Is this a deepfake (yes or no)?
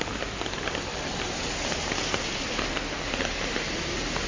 no